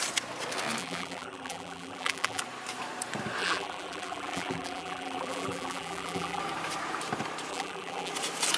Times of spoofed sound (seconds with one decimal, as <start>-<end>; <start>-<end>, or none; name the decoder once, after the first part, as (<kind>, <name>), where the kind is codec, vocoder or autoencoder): 0.8-2.4 (vocoder, BigVGAN v2); 3.4-6.4; 7.5-8.1